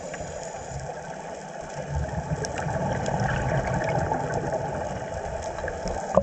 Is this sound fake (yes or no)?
no